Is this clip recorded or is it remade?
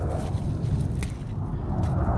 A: recorded